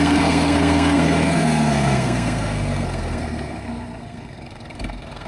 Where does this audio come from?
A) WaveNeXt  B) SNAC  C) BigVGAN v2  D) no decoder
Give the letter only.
B